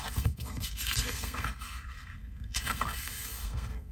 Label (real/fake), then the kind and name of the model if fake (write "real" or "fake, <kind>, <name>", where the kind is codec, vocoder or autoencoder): fake, codec, SNAC